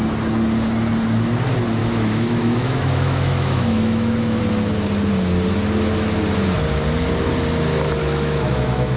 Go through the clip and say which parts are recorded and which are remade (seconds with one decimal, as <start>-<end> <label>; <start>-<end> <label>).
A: 0.0-1.8 recorded; 1.8-4.4 remade; 4.4-8.0 recorded; 8.0-9.0 remade